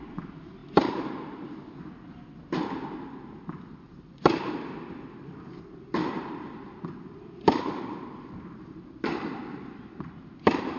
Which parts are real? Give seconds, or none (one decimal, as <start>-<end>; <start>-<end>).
0.0-6.0; 10.1-10.8